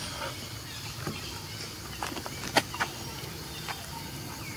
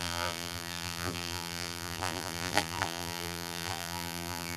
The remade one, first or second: second